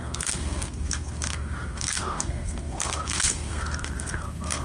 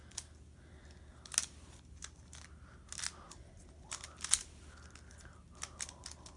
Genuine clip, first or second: second